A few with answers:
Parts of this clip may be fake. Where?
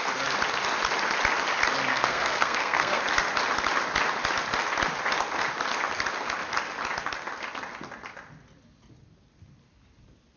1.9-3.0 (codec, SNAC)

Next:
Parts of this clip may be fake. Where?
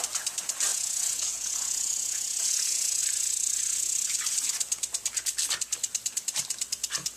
0.7-3.0 (vocoder, Vocos)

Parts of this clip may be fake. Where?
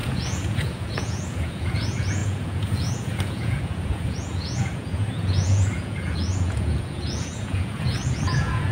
0.0-8.7 (vocoder, Vocos)